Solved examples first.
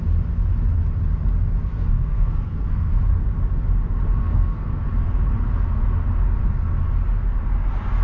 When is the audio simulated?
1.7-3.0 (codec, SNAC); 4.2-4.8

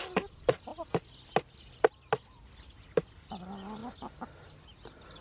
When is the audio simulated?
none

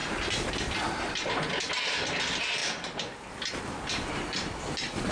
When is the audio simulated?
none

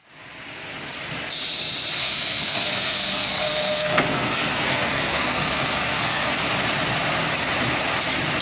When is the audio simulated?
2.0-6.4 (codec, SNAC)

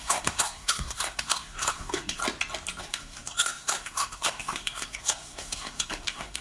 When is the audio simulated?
0.0-2.2 (codec, SNAC); 2.8-6.4

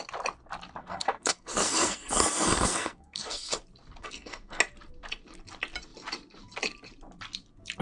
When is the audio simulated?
0.8-3.6 (codec, SNAC); 4.0-4.6